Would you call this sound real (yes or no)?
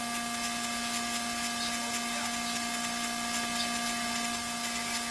yes